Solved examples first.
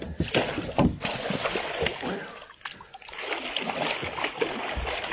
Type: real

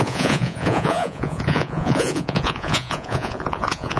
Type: fake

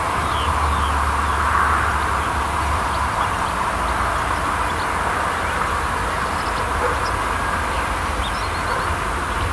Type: real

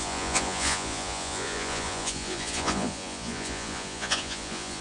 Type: fake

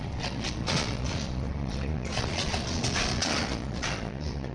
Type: fake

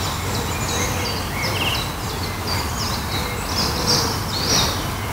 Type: real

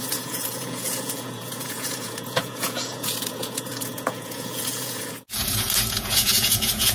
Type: fake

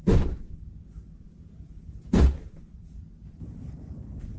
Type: real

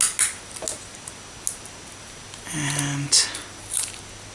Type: real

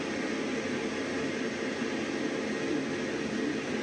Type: real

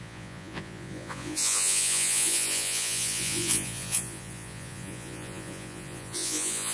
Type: fake